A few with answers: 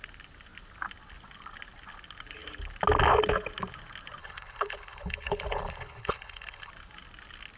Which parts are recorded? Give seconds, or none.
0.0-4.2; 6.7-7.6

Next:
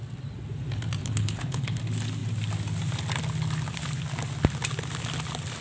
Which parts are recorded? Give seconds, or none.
0.0-1.0; 1.8-5.6

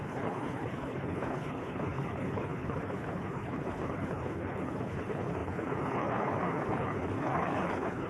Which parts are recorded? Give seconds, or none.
none

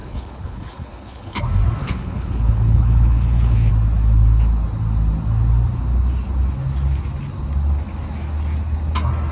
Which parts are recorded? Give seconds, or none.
1.4-1.8; 3.7-9.3

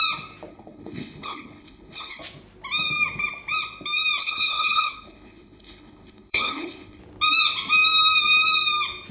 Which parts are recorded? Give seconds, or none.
0.0-0.5; 2.2-4.2; 7.0-9.1

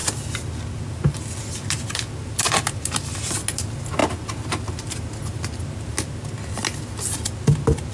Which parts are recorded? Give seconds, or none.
0.0-7.9